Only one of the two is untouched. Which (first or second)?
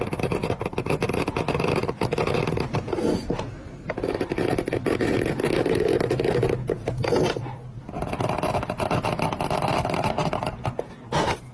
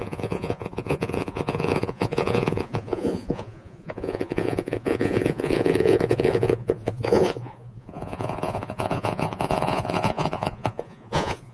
first